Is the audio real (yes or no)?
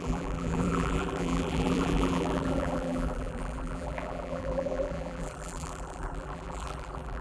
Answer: no